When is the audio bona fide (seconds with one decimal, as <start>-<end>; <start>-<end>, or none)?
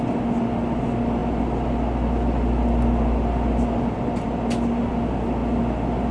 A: 0.0-6.1